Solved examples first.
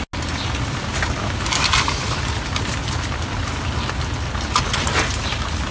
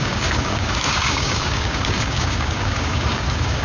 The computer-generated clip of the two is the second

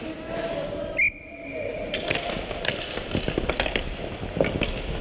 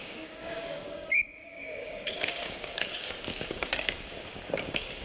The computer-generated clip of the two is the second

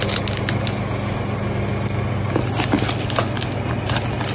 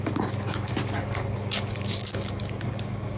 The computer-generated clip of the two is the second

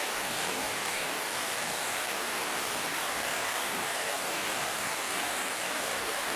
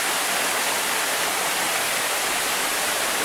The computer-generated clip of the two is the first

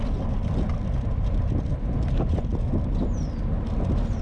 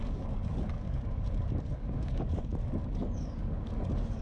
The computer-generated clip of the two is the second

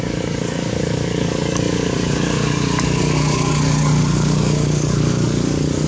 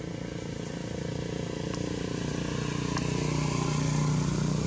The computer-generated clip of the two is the first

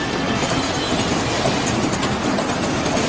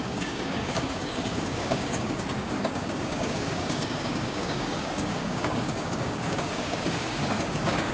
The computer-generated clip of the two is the second